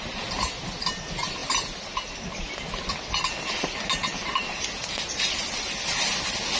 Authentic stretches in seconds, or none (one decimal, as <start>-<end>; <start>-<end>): 0.0-6.6